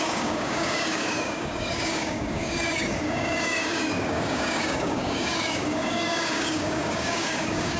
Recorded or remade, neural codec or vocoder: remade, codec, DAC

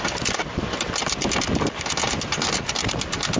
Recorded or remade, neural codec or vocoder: recorded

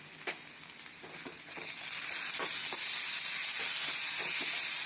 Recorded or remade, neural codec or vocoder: recorded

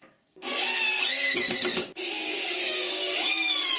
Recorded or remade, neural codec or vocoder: remade, codec, DAC